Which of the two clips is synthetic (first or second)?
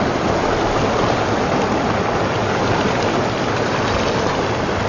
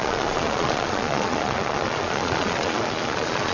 second